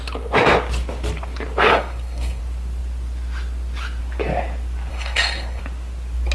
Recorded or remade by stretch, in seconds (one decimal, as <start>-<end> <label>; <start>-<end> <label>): 0.0-1.7 recorded; 1.7-2.4 remade; 2.4-4.9 recorded; 4.9-5.6 remade; 5.6-6.3 recorded